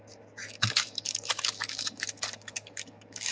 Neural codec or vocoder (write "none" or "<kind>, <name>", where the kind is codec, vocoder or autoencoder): codec, DAC